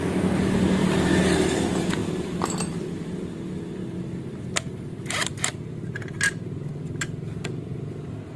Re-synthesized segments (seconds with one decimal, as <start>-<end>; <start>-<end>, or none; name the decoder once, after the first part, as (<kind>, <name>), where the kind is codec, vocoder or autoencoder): 0.8-1.5 (vocoder, BigVGAN v2); 2.0-3.0